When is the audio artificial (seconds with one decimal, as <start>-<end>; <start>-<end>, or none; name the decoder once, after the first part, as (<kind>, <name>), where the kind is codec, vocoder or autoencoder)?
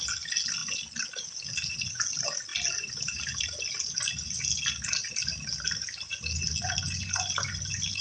none